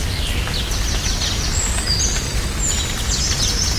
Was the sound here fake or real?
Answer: real